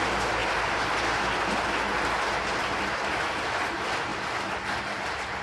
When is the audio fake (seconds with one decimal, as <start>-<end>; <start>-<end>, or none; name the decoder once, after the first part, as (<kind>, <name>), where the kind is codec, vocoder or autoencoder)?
none